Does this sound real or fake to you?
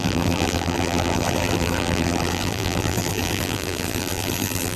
fake